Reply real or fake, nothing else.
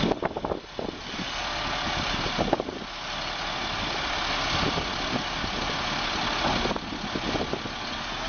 real